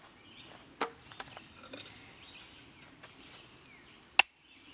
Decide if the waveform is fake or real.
real